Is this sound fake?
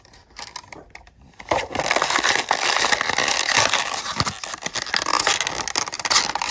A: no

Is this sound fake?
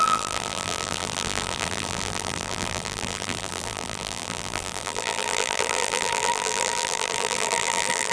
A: yes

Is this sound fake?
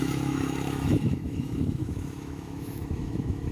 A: yes